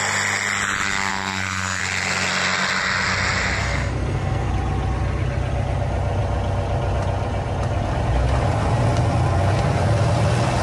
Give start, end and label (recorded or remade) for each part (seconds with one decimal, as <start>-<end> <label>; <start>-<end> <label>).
0.0-1.1 recorded; 1.1-1.8 remade; 1.8-3.6 recorded; 3.6-4.5 remade; 4.5-10.6 recorded